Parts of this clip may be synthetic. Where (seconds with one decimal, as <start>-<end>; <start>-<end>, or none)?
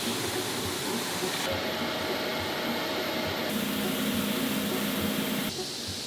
none